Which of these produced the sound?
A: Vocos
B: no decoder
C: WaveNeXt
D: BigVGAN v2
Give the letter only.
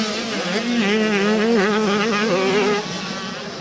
B